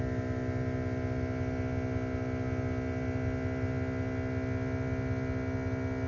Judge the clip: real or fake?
real